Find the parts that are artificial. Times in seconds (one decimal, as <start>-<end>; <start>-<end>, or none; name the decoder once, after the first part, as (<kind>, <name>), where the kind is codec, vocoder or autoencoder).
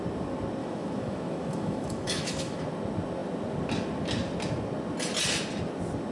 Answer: 0.6-2.6 (autoencoder, DAC-VAE)